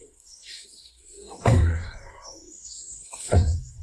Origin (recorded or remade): remade